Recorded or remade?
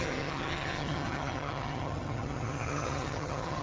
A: remade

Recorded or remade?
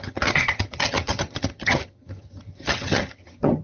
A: remade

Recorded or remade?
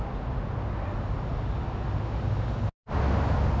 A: recorded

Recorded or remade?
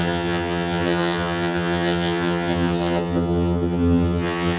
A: remade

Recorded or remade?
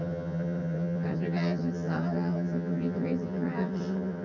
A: remade